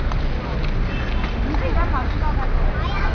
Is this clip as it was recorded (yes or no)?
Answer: yes